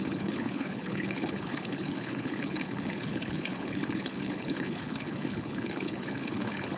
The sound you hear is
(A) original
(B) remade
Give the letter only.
B